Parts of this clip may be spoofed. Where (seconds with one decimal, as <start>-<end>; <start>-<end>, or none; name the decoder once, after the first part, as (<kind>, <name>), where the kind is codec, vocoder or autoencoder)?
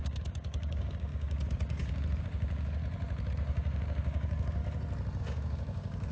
0.0-2.8 (codec, DAC); 3.3-4.6; 5.2-6.1